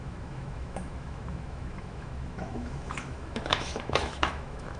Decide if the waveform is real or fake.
fake